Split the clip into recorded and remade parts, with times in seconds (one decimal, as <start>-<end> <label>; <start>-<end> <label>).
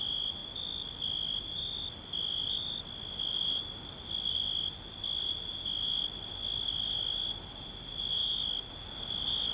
0.0-9.5 recorded